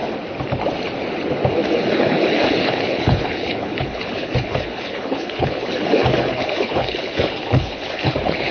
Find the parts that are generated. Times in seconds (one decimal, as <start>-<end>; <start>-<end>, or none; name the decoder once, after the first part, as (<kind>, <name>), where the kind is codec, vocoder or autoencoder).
1.9-8.5 (codec, HILCodec)